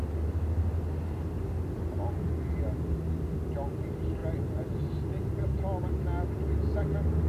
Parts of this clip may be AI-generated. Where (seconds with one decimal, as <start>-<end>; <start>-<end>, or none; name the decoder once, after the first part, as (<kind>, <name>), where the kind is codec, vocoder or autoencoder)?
none